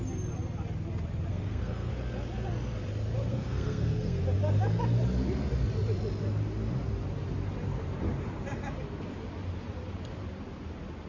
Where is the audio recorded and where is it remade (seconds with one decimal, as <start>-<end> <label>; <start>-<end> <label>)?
0.0-1.3 recorded; 1.3-1.9 remade; 1.9-3.3 recorded; 3.3-4.2 remade; 4.2-11.1 recorded